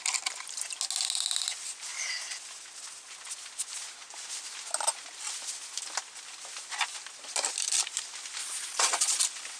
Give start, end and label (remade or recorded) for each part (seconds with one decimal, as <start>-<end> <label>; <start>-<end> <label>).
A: 0.0-8.4 recorded; 8.4-9.2 remade; 9.2-9.6 recorded